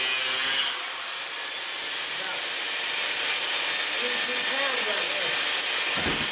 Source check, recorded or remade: recorded